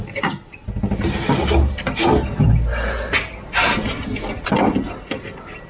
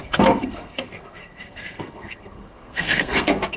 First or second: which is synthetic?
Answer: second